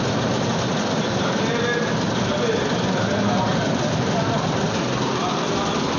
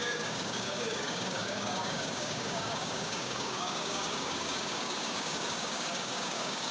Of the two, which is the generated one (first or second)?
second